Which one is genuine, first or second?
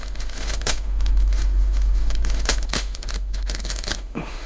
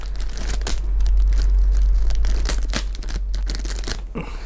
second